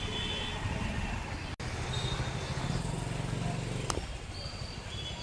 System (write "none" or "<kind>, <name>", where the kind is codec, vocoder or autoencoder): none